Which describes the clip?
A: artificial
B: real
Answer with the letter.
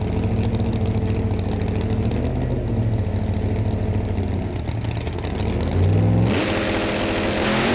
B